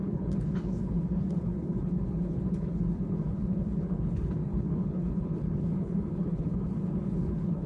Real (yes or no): no